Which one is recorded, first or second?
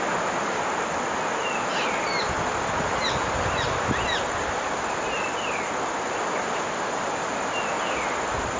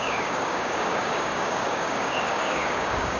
first